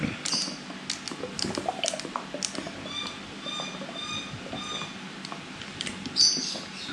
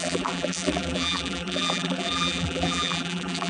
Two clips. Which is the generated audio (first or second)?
second